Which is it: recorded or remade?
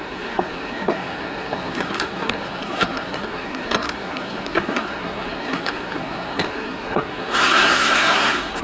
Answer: remade